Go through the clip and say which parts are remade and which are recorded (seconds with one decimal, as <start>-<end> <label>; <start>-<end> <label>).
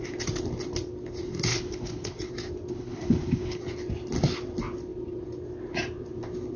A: 0.0-1.5 recorded; 1.5-2.3 remade; 2.3-2.7 recorded; 2.7-3.6 remade; 3.6-6.6 recorded